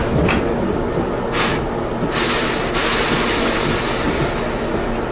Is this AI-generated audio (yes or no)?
no